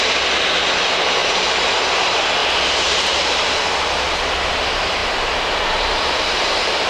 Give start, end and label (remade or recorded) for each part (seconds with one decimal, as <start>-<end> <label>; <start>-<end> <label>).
0.0-1.2 recorded; 1.2-1.8 remade; 1.8-2.4 recorded; 2.4-3.7 remade; 3.7-6.9 recorded